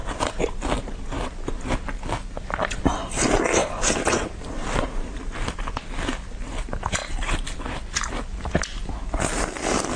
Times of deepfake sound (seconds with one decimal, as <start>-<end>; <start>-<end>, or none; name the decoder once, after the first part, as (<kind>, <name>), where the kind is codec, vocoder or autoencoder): 0.0-0.6 (vocoder, BigVGAN v2); 3.6-5.6